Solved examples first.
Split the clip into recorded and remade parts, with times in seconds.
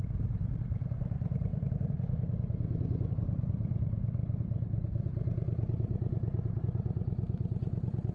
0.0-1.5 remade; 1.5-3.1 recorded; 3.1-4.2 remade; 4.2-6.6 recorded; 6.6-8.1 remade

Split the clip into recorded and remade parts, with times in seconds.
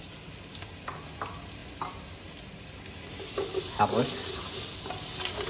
0.0-5.5 recorded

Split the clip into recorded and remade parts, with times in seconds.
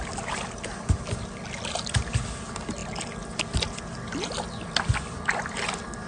0.0-2.8 recorded; 2.8-6.1 remade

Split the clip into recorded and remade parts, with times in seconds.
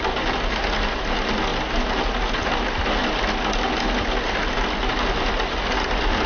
0.0-6.3 recorded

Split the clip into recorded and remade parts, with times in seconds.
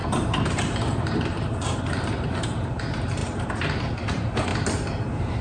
0.0-4.5 remade; 4.5-5.4 recorded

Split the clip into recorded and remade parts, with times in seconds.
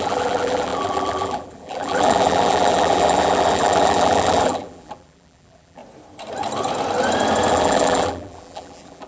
0.0-5.8 remade; 5.8-7.5 recorded; 7.5-9.1 remade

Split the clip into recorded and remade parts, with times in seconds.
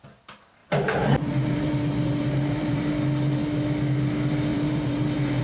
0.0-0.6 recorded; 0.6-2.9 remade; 2.9-4.5 recorded; 4.5-5.4 remade